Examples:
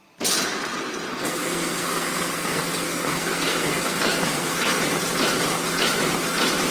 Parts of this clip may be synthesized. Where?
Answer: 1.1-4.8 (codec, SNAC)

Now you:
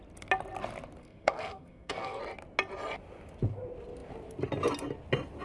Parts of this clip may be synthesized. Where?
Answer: 1.0-2.2 (codec, SNAC)

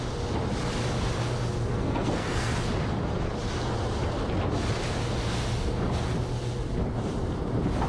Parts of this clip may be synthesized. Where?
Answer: 1.7-2.5 (codec, SNAC)

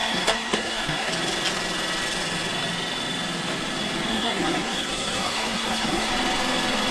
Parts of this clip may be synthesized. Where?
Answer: 0.0-1.1 (codec, SNAC); 4.1-6.1

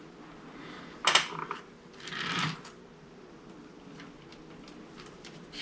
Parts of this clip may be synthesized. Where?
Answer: none

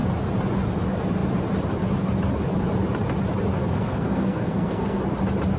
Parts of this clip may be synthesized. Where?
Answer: 3.6-5.0 (codec, SNAC)

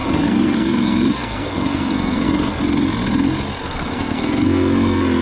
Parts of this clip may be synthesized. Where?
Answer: 0.0-2.6 (codec, SNAC); 3.6-5.2

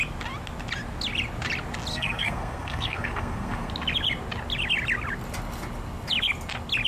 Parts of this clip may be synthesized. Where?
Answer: 1.9-3.7 (codec, SNAC)